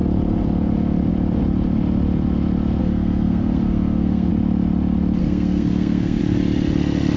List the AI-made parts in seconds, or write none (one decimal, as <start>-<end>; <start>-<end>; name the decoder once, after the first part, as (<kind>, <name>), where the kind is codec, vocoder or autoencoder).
2.8-4.3 (codec, SNAC); 5.2-6.2